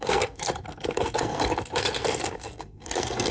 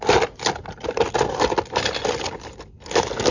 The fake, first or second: first